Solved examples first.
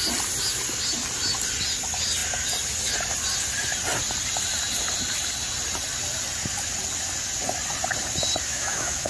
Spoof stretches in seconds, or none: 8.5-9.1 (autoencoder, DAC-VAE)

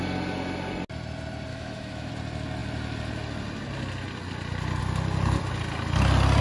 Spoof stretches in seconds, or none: 1.5-2.1 (autoencoder, DAC-VAE)